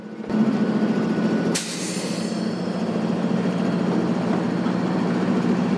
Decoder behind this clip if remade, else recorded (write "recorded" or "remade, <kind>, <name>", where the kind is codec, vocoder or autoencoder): recorded